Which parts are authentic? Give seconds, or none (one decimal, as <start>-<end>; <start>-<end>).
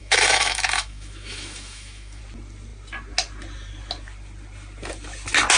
2.2-5.6